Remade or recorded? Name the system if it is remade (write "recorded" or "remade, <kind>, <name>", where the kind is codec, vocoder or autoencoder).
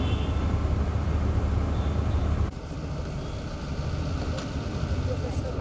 recorded